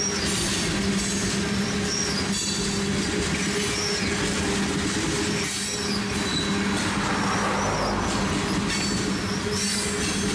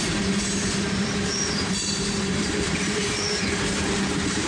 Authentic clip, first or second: first